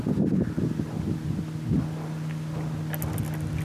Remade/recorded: recorded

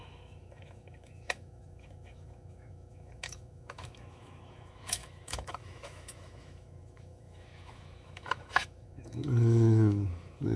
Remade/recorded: remade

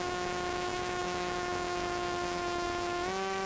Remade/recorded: remade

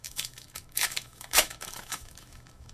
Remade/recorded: remade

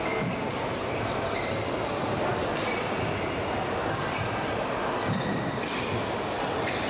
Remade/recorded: recorded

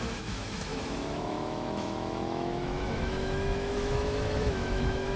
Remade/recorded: remade